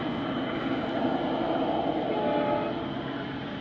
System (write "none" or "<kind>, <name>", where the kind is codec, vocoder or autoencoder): none